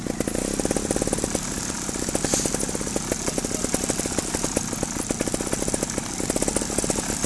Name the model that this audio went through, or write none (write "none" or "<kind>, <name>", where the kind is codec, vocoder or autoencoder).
none